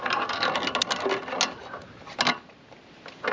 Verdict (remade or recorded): recorded